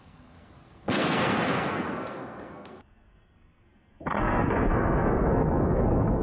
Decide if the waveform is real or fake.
fake